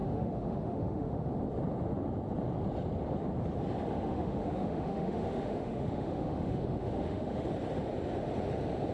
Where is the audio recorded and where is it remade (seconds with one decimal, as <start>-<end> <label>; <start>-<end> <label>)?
0.0-1.3 remade; 1.3-3.9 recorded; 3.9-7.5 remade; 7.5-8.9 recorded